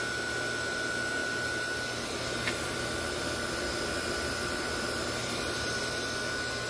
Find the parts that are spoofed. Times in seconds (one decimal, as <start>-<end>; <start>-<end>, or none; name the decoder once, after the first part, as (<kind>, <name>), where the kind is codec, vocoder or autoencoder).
5.2-5.8 (vocoder, BigVGAN v2)